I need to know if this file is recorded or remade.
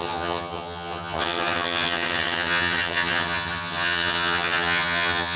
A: remade